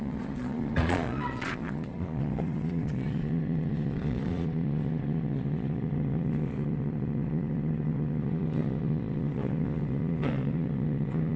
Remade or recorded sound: remade